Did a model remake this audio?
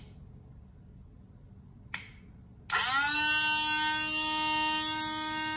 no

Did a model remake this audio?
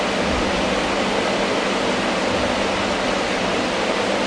no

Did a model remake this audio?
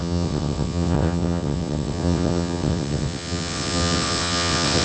yes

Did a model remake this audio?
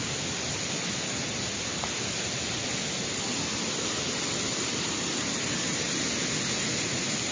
no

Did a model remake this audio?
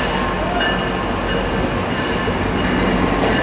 no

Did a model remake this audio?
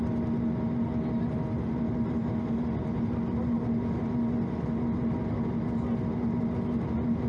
no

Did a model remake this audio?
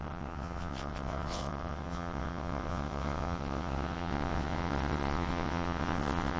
yes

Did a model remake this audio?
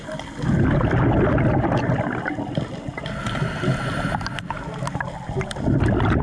no